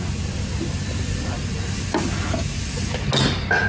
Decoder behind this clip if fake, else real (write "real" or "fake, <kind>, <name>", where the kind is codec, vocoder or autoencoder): real